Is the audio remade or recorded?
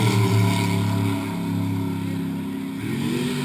recorded